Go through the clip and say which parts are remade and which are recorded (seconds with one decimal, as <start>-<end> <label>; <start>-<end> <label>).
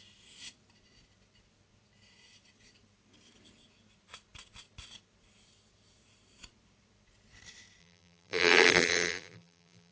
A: 0.0-7.8 recorded; 7.8-9.9 remade